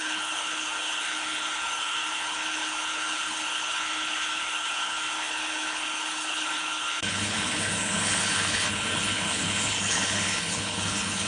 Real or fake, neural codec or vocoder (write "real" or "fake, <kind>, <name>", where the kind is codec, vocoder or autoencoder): fake, codec, HILCodec